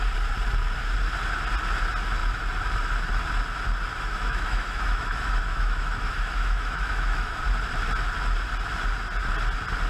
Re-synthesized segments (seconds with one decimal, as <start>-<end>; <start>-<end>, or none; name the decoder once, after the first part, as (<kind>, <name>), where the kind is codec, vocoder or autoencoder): 3.9-7.4 (autoencoder, DAC-VAE)